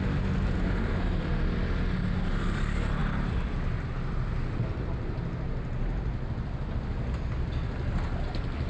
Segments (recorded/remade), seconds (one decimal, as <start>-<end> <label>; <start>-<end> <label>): 0.0-8.7 recorded